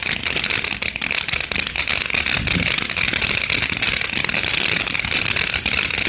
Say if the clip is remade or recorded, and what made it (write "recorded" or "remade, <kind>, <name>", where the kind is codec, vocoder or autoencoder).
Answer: recorded